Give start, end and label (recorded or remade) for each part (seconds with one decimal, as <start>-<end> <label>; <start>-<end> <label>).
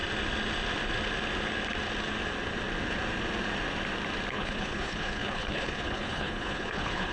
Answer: 0.0-4.3 recorded; 4.3-7.1 remade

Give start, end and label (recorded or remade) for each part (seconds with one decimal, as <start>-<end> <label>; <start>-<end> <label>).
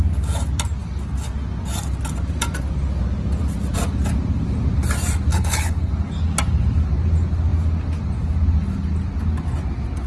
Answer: 0.0-5.3 recorded; 5.3-5.9 remade; 5.9-10.1 recorded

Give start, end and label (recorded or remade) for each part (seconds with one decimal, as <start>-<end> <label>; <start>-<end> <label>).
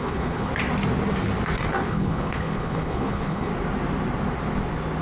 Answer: 0.0-0.5 remade; 0.5-1.8 recorded; 1.8-3.5 remade; 3.5-5.0 recorded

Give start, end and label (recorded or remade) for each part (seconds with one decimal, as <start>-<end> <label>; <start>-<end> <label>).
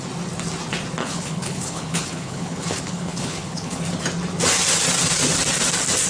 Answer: 0.0-1.0 recorded; 1.0-3.8 remade; 3.8-6.1 recorded